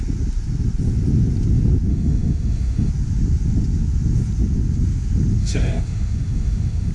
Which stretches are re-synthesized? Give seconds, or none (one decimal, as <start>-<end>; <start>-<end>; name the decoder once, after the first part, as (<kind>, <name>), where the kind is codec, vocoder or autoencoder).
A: 1.9-2.9 (autoencoder, DAC-VAE); 5.4-6.9